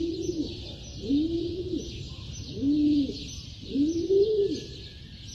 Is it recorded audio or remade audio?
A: recorded